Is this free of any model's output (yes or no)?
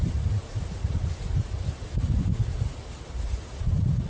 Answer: yes